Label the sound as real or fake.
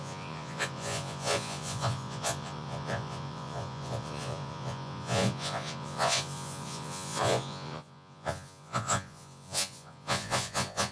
fake